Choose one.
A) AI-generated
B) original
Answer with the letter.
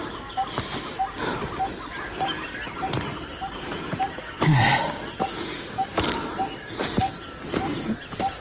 B